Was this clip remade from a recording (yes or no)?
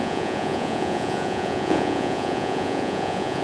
yes